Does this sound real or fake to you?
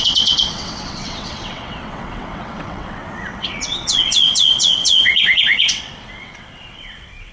fake